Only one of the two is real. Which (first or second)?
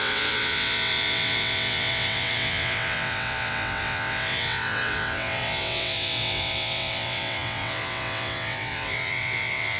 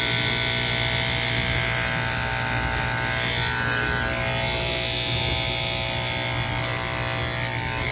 second